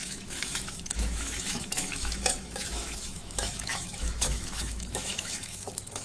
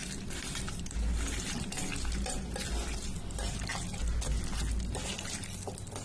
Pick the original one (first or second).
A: second